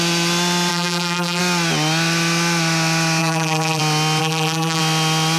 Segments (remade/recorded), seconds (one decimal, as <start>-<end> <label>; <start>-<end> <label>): 0.0-0.7 recorded; 0.7-1.4 remade; 1.4-3.2 recorded; 3.2-3.8 remade; 3.8-4.2 recorded; 4.2-4.8 remade; 4.8-5.4 recorded

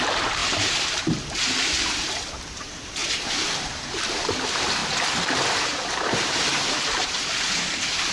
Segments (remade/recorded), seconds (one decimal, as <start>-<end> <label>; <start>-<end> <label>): 0.0-4.8 remade; 4.8-5.6 recorded; 5.6-8.1 remade

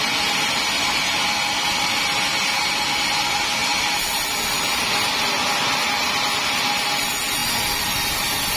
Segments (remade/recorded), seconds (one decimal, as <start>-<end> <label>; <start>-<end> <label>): 0.0-7.4 recorded; 7.4-7.9 remade; 7.9-8.6 recorded

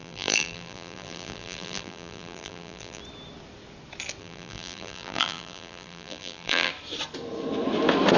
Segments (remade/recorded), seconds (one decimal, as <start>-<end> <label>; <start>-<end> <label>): 0.0-3.0 remade; 3.0-4.2 recorded; 4.2-6.7 remade; 6.7-8.2 recorded

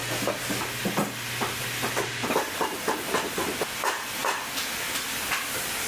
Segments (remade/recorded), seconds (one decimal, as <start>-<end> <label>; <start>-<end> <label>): 0.0-5.9 recorded